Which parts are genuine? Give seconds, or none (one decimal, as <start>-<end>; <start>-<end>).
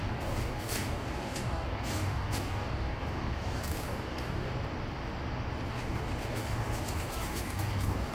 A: 4.5-5.7